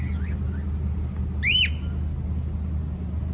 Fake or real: real